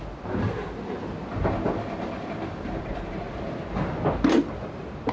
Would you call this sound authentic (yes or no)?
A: yes